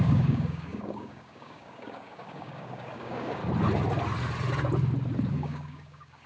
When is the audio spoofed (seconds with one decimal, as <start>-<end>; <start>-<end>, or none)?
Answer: 0.0-3.4; 5.3-6.3